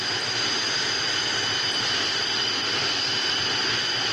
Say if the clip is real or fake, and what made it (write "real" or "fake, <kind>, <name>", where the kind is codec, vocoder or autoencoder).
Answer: real